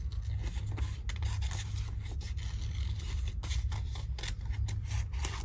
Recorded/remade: recorded